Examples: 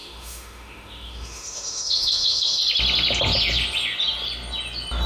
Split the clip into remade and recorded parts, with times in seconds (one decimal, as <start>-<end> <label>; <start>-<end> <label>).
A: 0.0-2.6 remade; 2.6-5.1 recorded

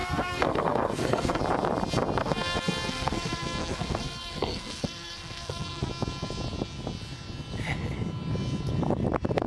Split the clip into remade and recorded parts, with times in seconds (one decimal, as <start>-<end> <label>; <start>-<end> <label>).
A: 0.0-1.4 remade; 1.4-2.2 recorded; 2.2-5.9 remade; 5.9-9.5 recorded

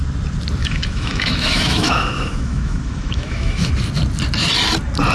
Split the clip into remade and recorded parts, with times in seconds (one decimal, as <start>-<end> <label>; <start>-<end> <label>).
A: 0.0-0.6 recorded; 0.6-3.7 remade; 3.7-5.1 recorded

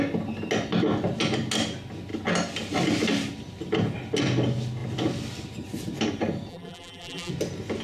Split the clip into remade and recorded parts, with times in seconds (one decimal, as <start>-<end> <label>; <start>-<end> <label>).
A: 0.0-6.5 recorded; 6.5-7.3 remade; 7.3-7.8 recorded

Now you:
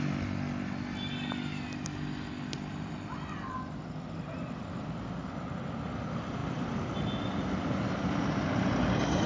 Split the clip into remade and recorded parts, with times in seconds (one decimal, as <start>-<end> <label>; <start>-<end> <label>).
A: 0.0-9.3 recorded